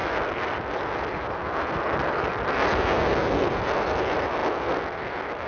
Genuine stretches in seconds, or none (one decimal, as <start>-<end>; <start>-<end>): 0.0-5.5